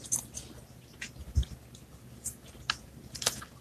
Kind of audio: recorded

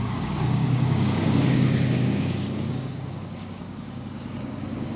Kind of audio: remade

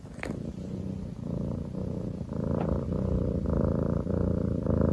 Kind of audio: recorded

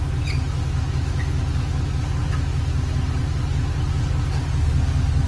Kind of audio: recorded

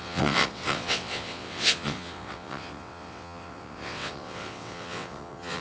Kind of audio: remade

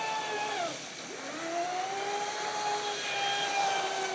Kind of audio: recorded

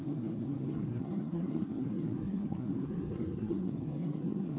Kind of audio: remade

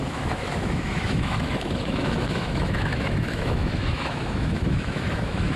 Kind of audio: remade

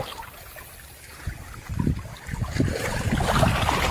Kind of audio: recorded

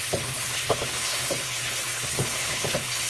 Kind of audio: remade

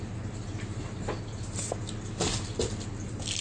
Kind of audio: recorded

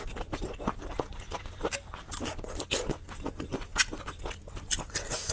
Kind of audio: recorded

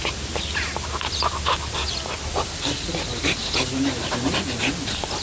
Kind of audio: recorded